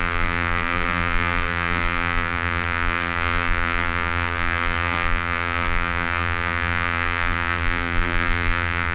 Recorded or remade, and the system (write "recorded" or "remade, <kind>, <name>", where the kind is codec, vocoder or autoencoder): remade, vocoder, BigVGAN v2